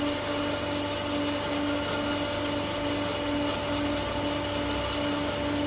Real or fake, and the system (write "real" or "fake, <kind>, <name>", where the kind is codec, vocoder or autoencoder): real